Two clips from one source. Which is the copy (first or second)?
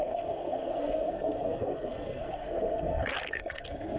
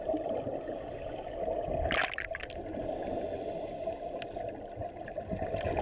first